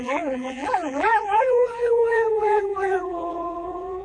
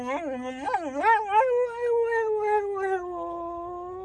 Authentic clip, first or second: second